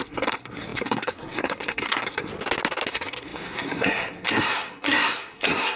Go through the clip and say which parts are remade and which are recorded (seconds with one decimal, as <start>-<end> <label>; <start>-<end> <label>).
0.0-2.3 remade; 2.3-2.9 recorded; 2.9-5.8 remade